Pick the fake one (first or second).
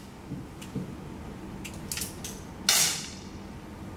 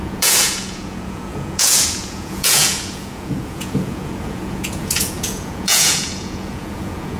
second